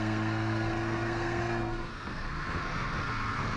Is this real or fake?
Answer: fake